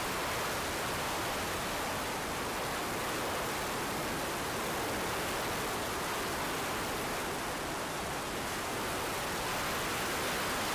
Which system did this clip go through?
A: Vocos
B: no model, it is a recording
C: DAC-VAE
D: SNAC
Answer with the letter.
B